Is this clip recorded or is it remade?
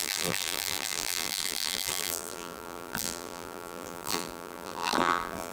remade